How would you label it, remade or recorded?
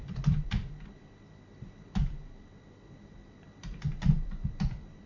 remade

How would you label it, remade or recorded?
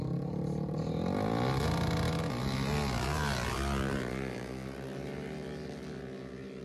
recorded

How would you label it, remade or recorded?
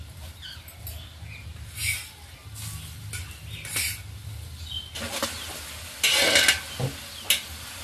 recorded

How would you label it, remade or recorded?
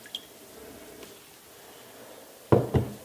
recorded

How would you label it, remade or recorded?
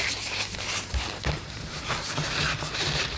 remade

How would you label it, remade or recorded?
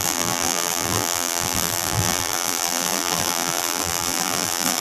remade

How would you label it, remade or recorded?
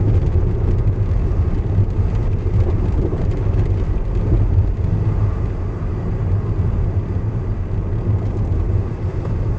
recorded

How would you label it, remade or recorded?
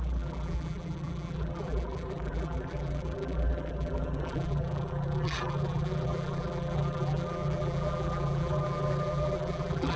remade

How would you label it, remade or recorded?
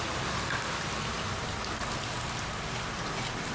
recorded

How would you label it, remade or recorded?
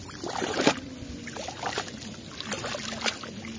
recorded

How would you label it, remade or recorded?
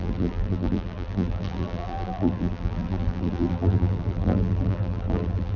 remade